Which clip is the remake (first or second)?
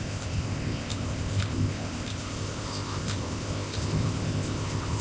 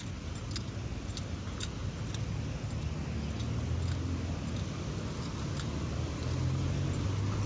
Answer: first